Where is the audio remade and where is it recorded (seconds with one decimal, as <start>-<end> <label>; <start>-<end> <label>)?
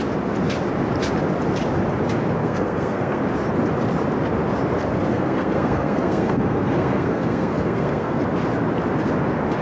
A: 0.0-2.4 recorded; 2.4-3.2 remade; 3.2-5.1 recorded; 5.1-8.2 remade; 8.2-9.6 recorded